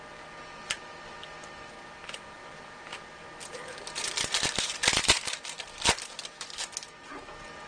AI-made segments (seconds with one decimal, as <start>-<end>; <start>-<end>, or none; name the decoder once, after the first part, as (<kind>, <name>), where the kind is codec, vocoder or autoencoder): none